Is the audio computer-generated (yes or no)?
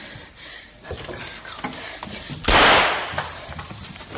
no